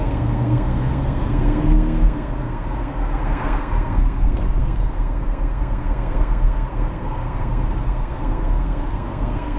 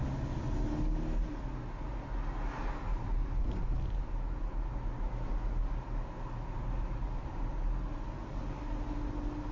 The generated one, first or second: first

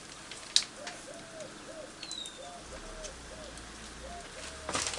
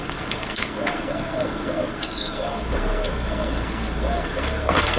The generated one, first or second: second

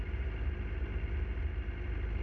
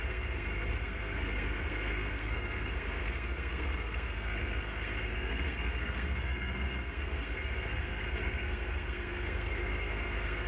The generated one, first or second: second